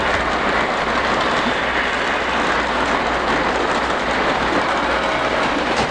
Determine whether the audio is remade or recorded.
recorded